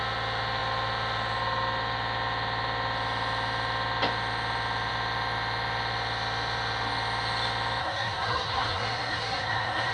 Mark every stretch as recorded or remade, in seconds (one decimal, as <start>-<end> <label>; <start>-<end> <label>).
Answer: 0.0-7.8 recorded; 7.8-9.9 remade

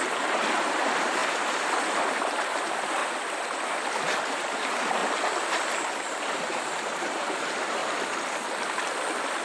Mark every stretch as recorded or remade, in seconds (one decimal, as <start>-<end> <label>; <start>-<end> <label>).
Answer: 0.0-3.0 remade; 3.0-3.9 recorded; 3.9-5.0 remade; 5.0-6.3 recorded; 6.3-7.8 remade; 7.8-9.4 recorded

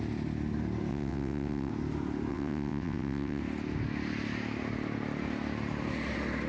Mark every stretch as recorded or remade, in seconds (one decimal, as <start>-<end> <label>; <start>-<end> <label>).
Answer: 0.0-0.9 recorded; 0.9-1.7 remade; 1.7-2.3 recorded; 2.3-3.4 remade; 3.4-6.5 recorded